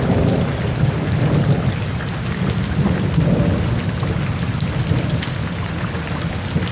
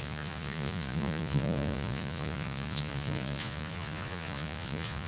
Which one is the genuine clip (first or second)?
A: first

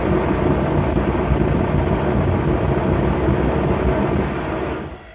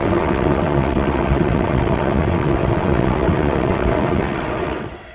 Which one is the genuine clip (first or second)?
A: first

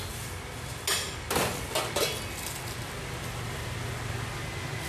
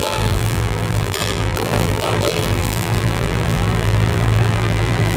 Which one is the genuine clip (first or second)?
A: first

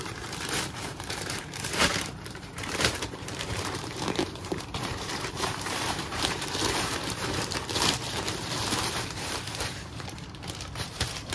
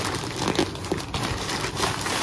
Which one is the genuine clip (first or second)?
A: second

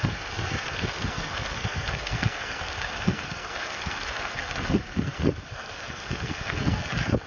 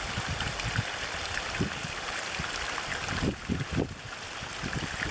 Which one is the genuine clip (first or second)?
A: second